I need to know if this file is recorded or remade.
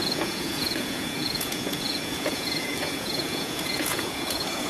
remade